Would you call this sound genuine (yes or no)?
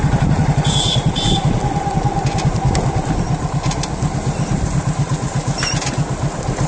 yes